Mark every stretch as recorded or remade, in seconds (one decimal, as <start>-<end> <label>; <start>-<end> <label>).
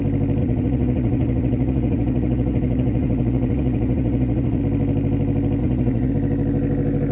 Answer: 0.0-0.4 recorded; 0.4-4.6 remade; 4.6-5.6 recorded; 5.6-6.1 remade; 6.1-7.1 recorded